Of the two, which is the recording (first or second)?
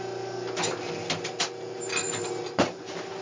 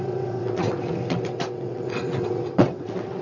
first